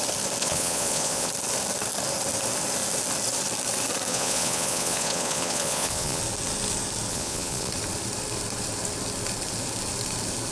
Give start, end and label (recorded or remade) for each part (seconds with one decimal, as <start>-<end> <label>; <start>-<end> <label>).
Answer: 0.0-0.4 recorded; 0.4-1.3 remade; 1.3-4.1 recorded; 4.1-6.2 remade; 6.2-7.1 recorded; 7.1-7.7 remade; 7.7-10.5 recorded